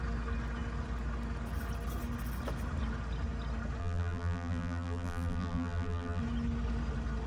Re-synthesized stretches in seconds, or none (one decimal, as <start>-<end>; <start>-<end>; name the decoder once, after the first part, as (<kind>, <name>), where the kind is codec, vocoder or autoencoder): 3.8-6.2 (vocoder, BigVGAN v2)